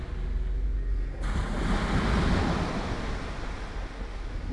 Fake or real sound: real